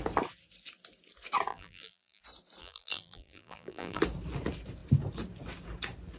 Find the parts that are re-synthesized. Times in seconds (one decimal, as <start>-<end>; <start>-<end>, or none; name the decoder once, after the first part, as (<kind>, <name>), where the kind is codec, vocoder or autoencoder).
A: 1.5-2.2 (vocoder, BigVGAN v2); 2.6-4.0